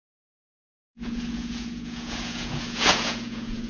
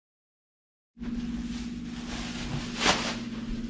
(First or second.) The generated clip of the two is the first